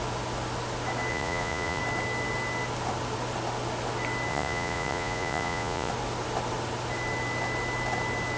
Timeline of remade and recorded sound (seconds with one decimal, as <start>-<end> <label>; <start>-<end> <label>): 0.0-1.1 recorded; 1.1-1.8 remade; 1.8-4.3 recorded; 4.3-5.9 remade; 5.9-8.4 recorded